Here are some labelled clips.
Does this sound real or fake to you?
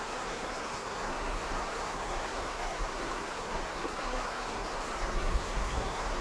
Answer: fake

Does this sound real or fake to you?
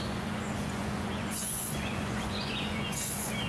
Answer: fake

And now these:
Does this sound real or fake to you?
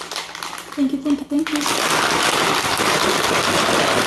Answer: real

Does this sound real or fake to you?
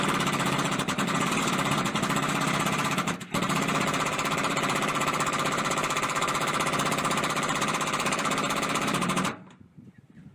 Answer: fake